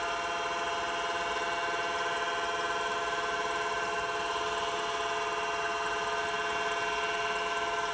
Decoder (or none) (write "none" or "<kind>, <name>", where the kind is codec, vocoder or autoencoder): none